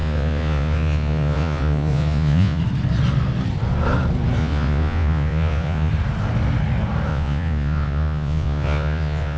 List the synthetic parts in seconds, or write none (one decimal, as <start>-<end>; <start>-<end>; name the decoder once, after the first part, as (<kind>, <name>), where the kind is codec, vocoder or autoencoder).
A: 0.0-2.6 (vocoder, Vocos); 4.4-5.9; 7.1-9.4